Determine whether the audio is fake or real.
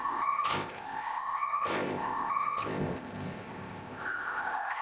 fake